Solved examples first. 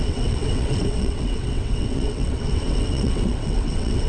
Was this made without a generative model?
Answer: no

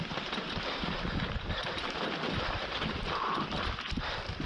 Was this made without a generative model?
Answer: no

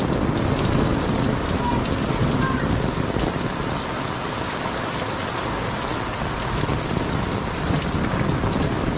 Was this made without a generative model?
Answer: yes